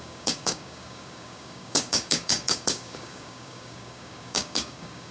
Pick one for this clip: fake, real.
fake